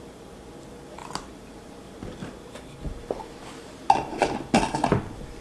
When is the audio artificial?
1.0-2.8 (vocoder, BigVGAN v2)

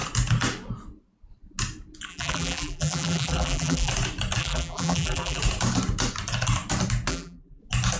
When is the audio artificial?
2.1-3.9 (vocoder, BigVGAN v2); 4.4-5.4; 7.1-7.6